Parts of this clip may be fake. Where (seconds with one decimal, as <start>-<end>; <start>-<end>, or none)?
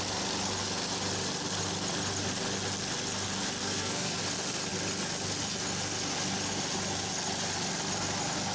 3.6-4.2